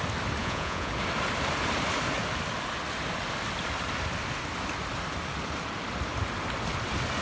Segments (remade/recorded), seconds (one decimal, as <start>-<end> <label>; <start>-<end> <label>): 0.0-0.4 recorded; 0.4-0.9 remade; 0.9-7.2 recorded